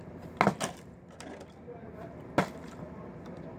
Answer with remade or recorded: recorded